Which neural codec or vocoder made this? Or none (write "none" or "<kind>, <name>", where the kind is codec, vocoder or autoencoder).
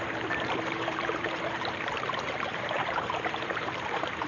vocoder, BigVGAN v2